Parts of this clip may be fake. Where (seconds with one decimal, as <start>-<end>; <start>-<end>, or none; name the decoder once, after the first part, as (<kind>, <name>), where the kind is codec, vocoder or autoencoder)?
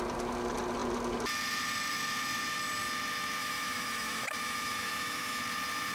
3.4-5.4 (autoencoder, DAC-VAE)